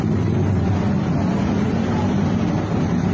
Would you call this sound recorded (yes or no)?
yes